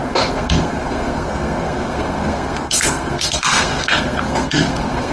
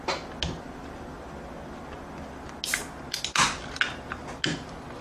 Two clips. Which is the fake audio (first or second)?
first